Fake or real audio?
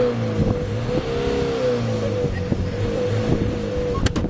real